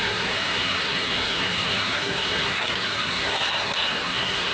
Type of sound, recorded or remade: remade